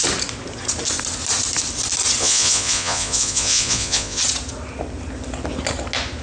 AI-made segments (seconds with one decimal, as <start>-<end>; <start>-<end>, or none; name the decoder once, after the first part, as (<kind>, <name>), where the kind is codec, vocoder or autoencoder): 2.2-4.2 (vocoder, Vocos)